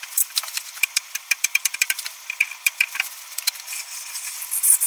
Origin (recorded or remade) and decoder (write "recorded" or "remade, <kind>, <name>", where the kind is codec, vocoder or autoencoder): remade, vocoder, BigVGAN v2